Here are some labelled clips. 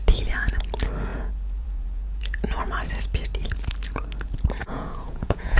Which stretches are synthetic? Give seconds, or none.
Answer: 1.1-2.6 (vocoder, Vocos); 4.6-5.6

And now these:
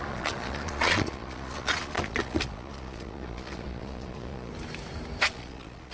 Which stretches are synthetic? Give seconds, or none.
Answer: 0.0-4.5 (vocoder, Vocos); 5.3-5.9

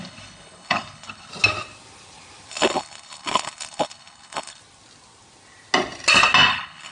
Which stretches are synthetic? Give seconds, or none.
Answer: 0.0-1.3 (codec, HILCodec); 2.5-4.6; 6.5-6.9

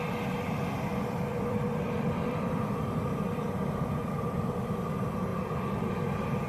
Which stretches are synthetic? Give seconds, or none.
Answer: 0.9-4.8 (vocoder, BigVGAN v2); 5.3-5.9

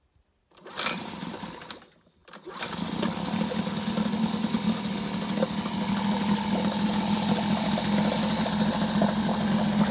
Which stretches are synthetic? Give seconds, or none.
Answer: none

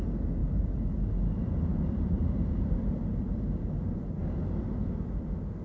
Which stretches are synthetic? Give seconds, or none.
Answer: 0.4-1.0 (vocoder, BigVGAN v2); 1.7-3.1

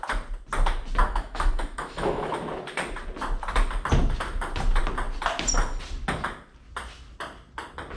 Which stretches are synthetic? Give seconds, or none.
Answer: 1.0-2.3 (autoencoder, DAC-VAE)